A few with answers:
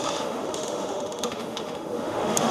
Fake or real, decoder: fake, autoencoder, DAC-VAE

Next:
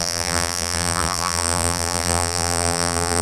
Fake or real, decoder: fake, vocoder, BigVGAN v2